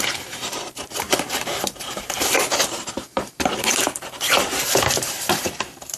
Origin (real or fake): fake